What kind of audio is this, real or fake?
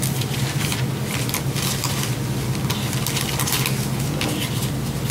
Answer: real